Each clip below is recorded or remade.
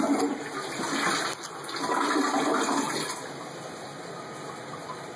recorded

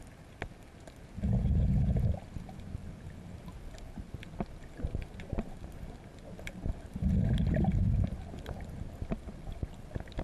recorded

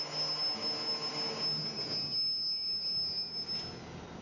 recorded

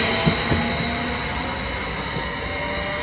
recorded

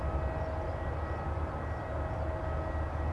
recorded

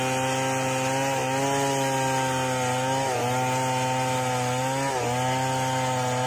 recorded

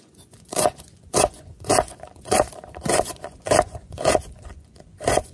remade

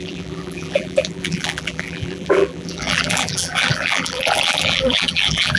remade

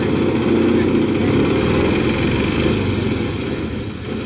recorded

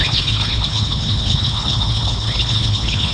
remade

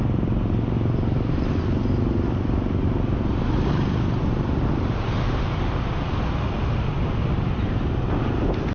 recorded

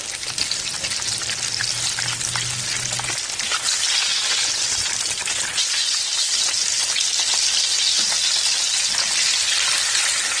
recorded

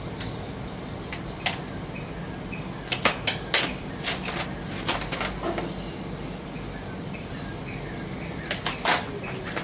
recorded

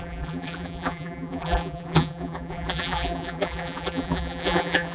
remade